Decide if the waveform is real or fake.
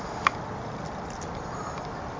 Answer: real